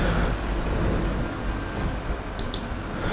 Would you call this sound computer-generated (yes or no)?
yes